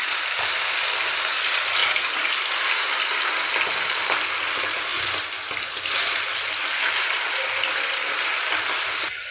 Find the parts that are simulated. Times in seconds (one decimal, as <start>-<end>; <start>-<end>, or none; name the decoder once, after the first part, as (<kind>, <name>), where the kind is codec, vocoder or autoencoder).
none